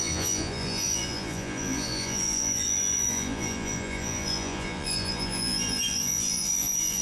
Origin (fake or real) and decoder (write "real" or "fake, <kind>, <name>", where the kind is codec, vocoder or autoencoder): fake, vocoder, Vocos